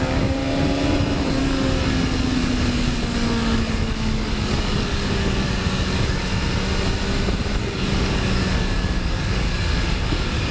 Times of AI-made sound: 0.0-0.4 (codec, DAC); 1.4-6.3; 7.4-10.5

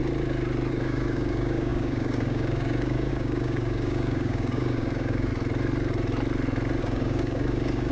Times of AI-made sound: 0.7-5.3 (codec, DAC); 6.8-7.9

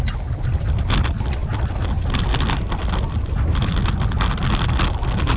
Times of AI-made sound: none

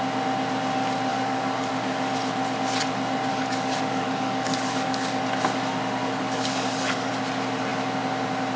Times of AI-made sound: 1.1-1.7 (codec, DAC); 3.3-5.2; 6.0-7.1

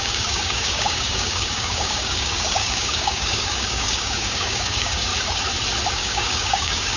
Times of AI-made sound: 0.0-5.1 (codec, DAC); 5.9-7.0

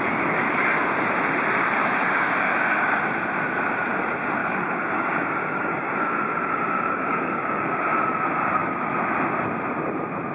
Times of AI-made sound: 1.8-3.0 (codec, DAC); 4.4-7.8

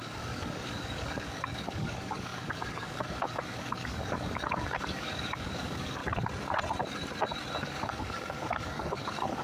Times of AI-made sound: 0.0-6.0 (codec, DAC); 7.6-9.4